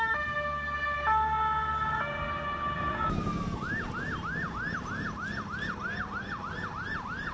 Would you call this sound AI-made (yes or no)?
no